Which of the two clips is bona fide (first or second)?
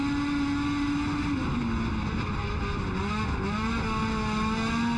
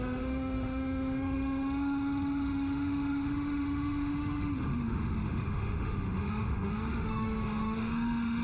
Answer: first